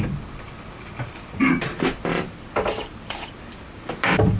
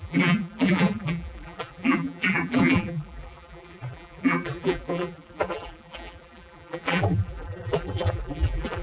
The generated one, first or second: second